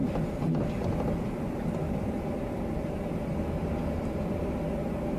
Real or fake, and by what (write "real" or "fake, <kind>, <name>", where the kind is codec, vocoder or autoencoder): real